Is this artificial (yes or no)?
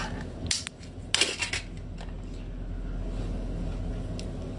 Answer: no